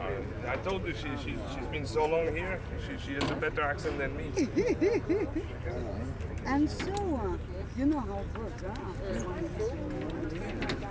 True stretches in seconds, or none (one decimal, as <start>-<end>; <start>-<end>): 0.0-10.9